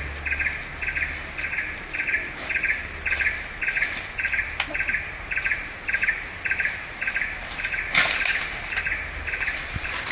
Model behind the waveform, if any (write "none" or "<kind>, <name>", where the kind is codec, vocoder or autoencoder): none